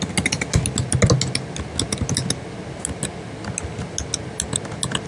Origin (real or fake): real